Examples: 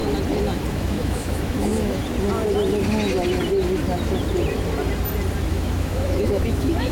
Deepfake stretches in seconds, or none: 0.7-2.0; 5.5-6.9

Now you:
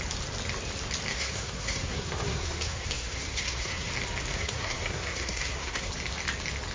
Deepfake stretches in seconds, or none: 1.1-3.9; 4.3-5.9

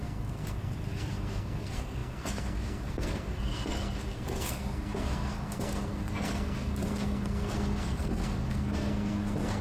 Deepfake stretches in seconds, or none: 0.0-9.6

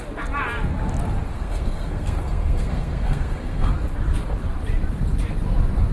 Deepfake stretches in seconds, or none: 1.3-3.7